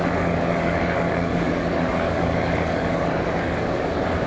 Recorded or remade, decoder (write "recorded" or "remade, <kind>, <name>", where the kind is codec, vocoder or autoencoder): remade, codec, DAC